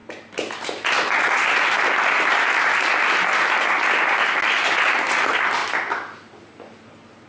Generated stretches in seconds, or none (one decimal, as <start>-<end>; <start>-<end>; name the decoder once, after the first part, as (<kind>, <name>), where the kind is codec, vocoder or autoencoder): none